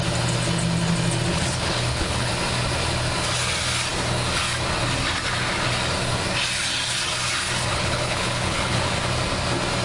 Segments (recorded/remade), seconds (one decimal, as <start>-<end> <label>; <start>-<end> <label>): 0.0-1.3 recorded; 1.3-2.3 remade; 2.3-7.7 recorded; 7.7-8.8 remade; 8.8-9.8 recorded